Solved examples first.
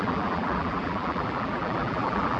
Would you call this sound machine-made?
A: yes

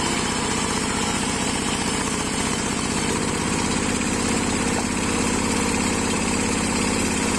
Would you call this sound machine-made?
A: yes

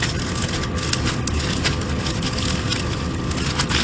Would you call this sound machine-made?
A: no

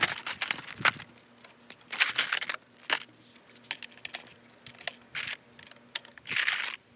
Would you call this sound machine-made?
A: no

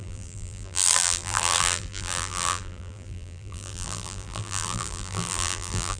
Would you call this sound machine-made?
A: yes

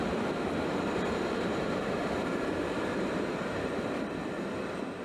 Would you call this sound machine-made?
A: yes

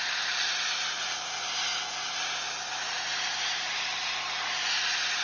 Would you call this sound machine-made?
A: no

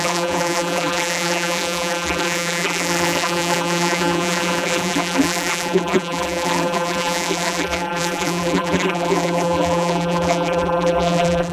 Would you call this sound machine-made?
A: yes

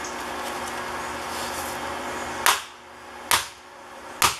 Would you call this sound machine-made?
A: no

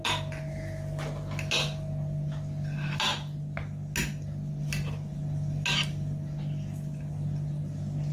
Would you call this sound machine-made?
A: no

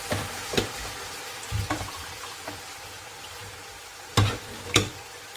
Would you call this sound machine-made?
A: yes